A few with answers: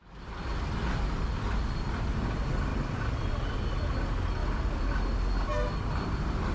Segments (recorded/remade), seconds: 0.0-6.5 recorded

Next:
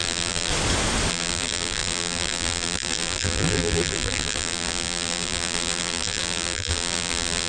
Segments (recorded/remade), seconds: 0.0-0.5 remade; 0.5-1.1 recorded; 1.1-7.5 remade

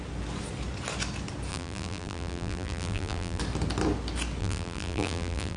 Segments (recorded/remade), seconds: 0.0-1.5 recorded; 1.5-3.4 remade; 3.4-4.4 recorded; 4.4-5.6 remade

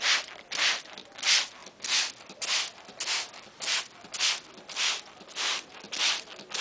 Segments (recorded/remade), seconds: 0.0-6.6 recorded

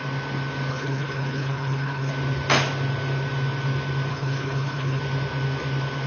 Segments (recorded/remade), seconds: 0.0-0.7 recorded; 0.7-2.1 remade; 2.1-4.1 recorded; 4.1-5.0 remade; 5.0-6.1 recorded

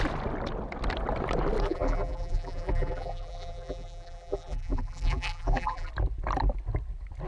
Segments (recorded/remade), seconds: 0.0-1.6 recorded; 1.6-5.9 remade; 5.9-7.3 recorded

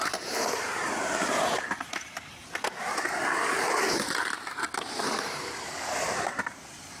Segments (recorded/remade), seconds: 0.0-2.4 remade; 2.4-5.0 recorded; 5.0-7.0 remade